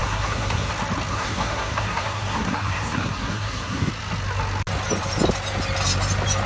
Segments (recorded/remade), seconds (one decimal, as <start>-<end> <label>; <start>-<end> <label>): 0.0-0.7 remade; 0.7-1.1 recorded; 1.1-3.9 remade; 3.9-6.5 recorded